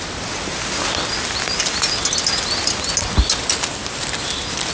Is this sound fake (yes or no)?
no